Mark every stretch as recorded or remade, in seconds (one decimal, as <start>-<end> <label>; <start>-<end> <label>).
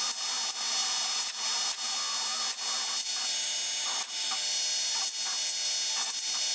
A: 0.0-6.5 recorded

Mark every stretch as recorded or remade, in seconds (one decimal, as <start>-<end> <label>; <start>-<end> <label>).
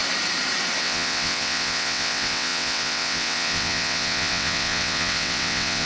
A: 0.0-0.8 recorded; 0.8-5.9 remade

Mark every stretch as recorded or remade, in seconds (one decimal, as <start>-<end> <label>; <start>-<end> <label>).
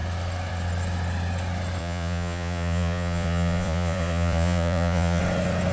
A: 0.0-1.8 recorded; 1.8-5.2 remade; 5.2-5.7 recorded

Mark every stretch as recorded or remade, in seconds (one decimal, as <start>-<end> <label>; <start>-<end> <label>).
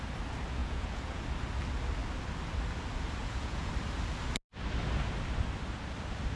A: 0.0-0.6 recorded; 0.6-1.2 remade; 1.2-3.2 recorded; 3.2-3.7 remade; 3.7-6.4 recorded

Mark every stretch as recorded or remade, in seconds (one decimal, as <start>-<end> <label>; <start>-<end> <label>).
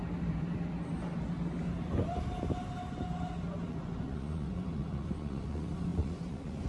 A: 0.0-3.7 recorded; 3.7-6.7 remade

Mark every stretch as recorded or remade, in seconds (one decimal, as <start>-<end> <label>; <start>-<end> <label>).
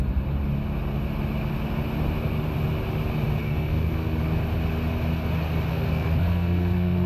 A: 0.0-3.4 recorded; 3.4-4.2 remade; 4.2-5.7 recorded; 5.7-7.1 remade